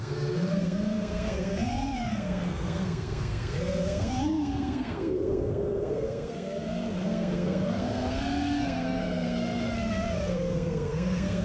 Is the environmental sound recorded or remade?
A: remade